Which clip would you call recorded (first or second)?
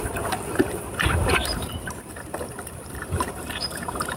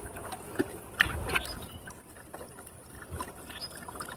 second